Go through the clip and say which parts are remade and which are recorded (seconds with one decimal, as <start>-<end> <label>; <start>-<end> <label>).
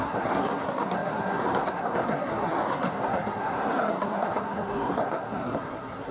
0.0-6.1 remade